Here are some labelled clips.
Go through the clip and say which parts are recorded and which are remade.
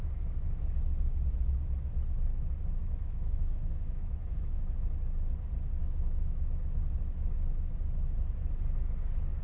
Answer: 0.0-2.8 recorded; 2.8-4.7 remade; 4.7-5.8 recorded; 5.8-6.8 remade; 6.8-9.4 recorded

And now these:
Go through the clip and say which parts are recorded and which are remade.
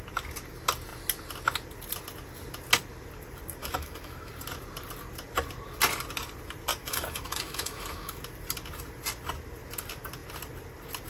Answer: 0.0-3.6 recorded; 3.6-4.3 remade; 4.3-6.8 recorded; 6.8-8.2 remade; 8.2-11.1 recorded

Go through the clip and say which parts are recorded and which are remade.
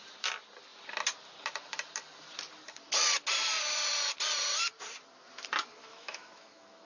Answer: 0.0-5.8 recorded; 5.8-6.9 remade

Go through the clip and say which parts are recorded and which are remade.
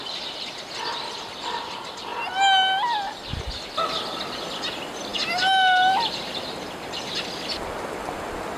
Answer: 0.0-8.6 recorded